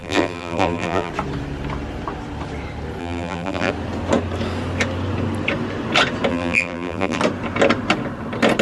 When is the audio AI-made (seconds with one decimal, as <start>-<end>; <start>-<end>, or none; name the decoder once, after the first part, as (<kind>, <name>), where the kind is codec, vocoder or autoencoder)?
0.0-1.1 (vocoder, BigVGAN v2); 3.0-3.7; 6.3-7.2